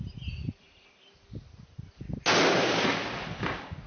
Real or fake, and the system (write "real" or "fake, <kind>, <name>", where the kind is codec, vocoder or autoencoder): real